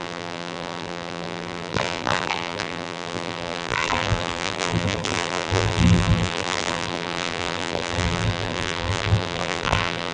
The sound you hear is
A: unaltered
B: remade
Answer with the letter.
B